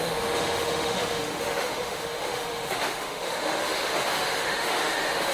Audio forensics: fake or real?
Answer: fake